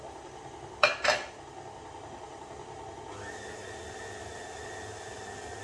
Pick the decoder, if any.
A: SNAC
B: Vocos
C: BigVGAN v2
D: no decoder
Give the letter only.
D